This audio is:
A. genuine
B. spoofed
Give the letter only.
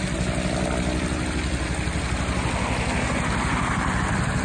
A